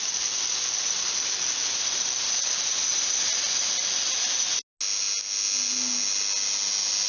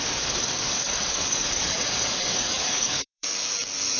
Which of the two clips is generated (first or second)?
second